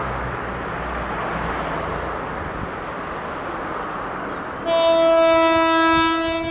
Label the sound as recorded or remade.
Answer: recorded